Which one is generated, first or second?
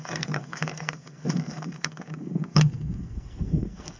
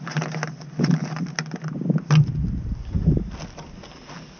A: first